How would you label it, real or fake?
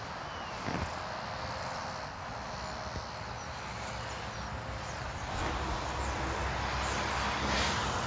real